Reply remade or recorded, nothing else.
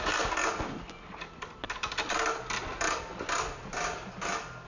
recorded